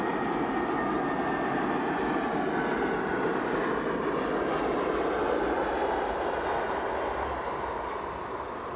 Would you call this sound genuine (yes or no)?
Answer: yes